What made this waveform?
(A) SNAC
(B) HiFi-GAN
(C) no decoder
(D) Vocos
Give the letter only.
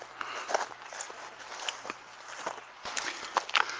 C